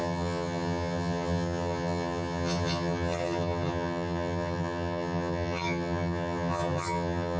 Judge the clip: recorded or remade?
remade